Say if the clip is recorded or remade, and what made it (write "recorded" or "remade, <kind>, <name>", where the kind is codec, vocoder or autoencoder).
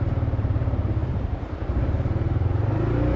remade, vocoder, BigVGAN v2